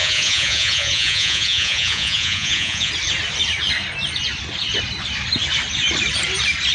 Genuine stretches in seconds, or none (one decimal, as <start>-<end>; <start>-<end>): 2.9-6.7